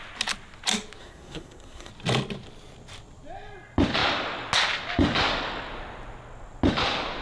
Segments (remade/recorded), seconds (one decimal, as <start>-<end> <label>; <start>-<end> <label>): 0.0-1.0 recorded; 1.0-1.9 remade; 1.9-7.2 recorded